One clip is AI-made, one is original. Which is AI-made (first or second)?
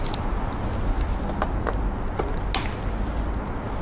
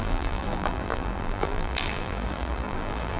second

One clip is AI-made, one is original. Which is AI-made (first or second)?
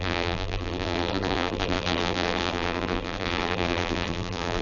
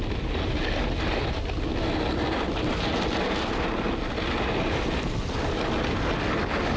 first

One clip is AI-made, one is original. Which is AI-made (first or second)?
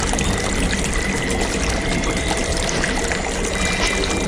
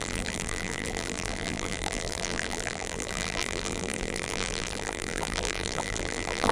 second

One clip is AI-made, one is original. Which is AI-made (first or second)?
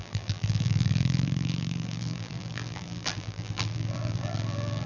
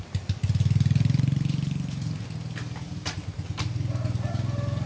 first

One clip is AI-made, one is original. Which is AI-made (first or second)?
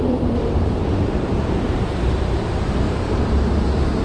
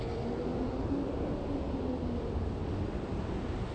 first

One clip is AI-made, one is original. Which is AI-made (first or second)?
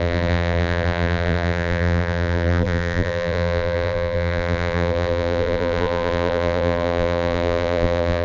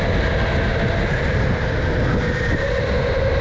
first